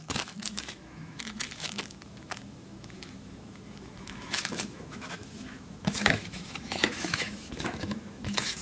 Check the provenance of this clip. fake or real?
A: fake